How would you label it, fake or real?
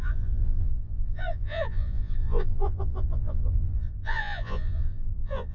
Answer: fake